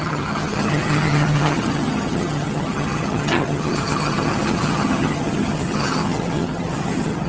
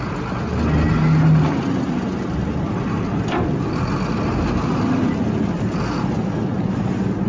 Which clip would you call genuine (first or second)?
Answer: second